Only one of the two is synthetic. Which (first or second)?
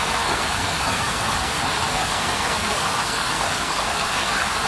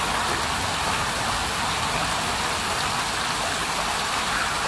first